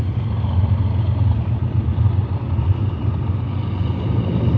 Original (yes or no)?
yes